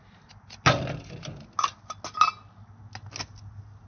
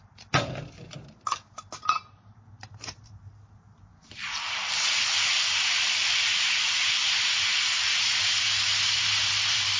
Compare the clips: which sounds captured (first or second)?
first